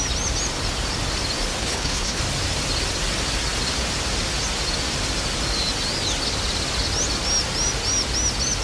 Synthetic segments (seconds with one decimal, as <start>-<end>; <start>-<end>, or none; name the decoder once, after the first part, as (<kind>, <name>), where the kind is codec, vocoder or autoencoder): 1.6-2.2 (codec, HILCodec)